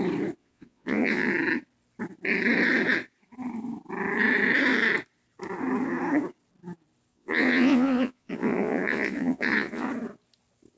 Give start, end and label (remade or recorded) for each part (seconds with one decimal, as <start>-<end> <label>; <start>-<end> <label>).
0.0-0.4 recorded; 0.4-1.3 remade; 1.3-7.1 recorded; 7.1-9.9 remade; 9.9-10.8 recorded